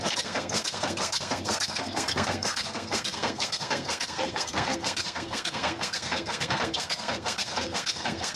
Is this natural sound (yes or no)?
no